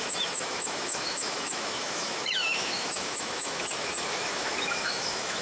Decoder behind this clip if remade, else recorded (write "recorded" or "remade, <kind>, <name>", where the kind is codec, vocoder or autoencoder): remade, autoencoder, DAC-VAE